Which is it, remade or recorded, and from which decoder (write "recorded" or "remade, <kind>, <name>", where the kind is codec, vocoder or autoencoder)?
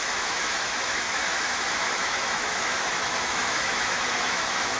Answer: remade, autoencoder, DAC-VAE